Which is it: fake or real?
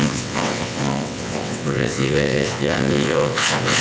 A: fake